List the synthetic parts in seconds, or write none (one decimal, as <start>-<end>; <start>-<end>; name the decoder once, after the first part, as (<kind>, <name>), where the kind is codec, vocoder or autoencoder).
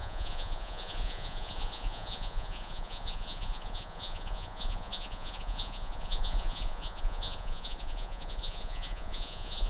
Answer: 0.0-9.7 (vocoder, Vocos)